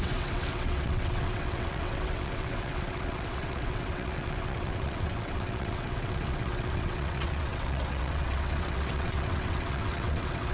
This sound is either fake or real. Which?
fake